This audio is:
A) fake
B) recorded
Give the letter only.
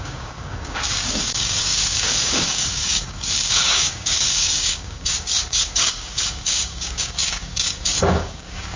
A